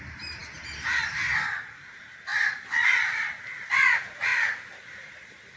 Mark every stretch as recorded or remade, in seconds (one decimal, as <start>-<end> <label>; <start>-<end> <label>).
0.0-0.4 recorded; 0.4-0.9 remade; 0.9-2.3 recorded; 2.3-3.4 remade; 3.4-4.3 recorded; 4.3-5.6 remade